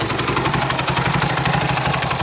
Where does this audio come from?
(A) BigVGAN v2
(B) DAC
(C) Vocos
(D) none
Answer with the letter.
A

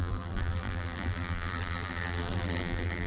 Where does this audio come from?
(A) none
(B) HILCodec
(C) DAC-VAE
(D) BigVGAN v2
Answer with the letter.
D